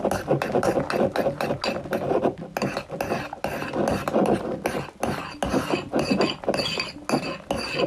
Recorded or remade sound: recorded